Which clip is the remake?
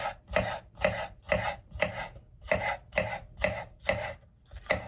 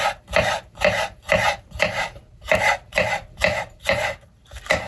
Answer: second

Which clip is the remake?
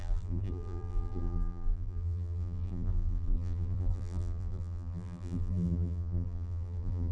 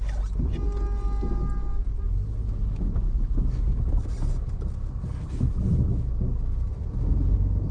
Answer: first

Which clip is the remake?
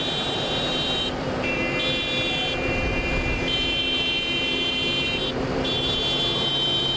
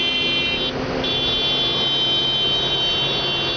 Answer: first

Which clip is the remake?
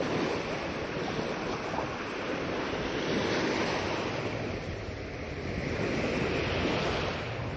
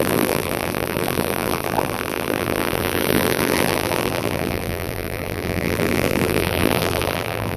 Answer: second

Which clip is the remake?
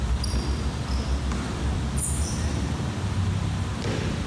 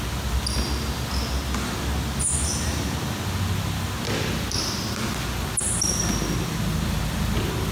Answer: first